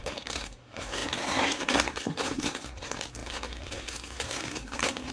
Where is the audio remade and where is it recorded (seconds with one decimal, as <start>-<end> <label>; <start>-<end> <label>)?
0.0-5.1 remade